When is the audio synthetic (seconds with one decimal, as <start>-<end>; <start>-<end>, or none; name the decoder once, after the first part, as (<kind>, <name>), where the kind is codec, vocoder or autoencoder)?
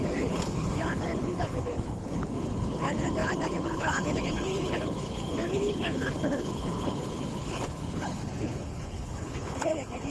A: 0.0-10.1 (codec, HILCodec)